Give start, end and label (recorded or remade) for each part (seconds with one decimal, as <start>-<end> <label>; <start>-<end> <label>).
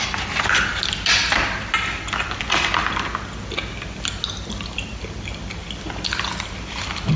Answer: 0.0-7.2 recorded